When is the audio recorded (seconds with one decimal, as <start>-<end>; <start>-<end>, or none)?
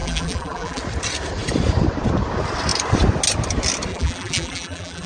0.8-3.9